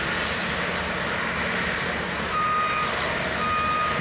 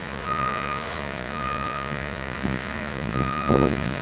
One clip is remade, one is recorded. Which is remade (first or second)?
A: second